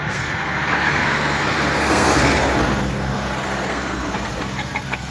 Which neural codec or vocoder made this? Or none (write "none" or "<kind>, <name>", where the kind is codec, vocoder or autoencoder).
codec, SNAC